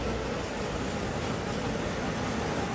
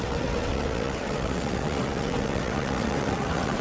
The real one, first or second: first